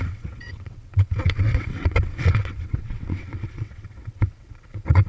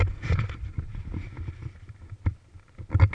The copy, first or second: first